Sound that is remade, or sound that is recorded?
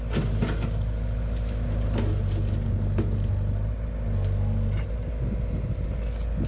recorded